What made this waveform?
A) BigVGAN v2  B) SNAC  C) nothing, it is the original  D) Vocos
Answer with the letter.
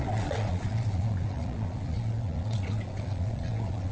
D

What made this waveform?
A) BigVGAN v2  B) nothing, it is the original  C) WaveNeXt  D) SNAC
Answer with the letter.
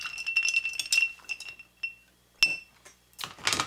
B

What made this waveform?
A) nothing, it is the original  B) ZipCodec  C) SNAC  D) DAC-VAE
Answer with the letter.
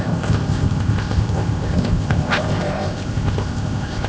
B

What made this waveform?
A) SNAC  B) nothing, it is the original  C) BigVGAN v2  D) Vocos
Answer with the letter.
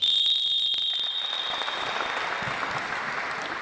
B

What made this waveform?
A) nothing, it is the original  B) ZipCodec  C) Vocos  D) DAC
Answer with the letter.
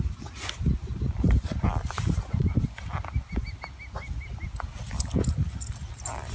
A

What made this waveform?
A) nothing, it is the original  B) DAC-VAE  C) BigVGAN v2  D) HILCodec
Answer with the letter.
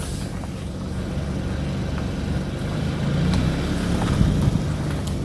A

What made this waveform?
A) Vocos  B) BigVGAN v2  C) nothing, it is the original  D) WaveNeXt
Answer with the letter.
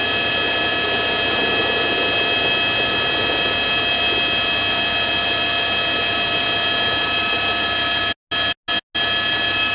C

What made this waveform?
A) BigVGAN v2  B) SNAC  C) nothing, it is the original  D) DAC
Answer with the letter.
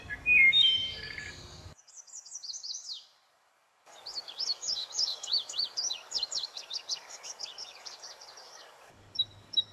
D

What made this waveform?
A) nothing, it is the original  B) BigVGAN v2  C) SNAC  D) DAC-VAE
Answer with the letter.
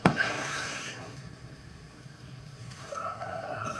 C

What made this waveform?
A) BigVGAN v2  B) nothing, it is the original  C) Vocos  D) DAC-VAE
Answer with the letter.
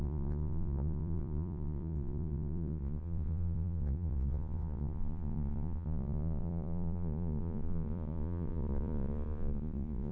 C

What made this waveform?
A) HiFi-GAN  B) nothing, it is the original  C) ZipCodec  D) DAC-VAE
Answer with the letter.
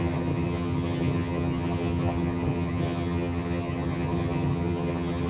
A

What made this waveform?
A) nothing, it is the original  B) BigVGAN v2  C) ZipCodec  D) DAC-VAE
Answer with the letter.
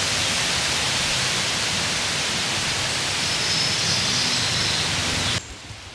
A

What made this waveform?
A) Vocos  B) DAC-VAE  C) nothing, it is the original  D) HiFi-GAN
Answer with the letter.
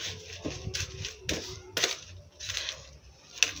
C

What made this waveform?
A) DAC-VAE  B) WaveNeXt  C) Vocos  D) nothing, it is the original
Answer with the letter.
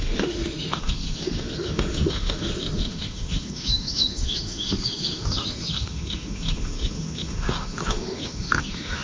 A